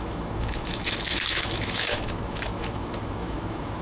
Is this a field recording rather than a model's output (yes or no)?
no